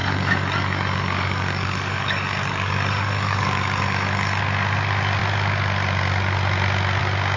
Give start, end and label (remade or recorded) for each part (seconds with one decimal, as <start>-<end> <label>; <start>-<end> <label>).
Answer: 0.0-4.4 remade; 4.4-7.4 recorded